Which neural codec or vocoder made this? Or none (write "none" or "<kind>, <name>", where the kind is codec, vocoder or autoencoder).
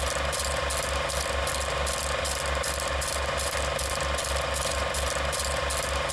none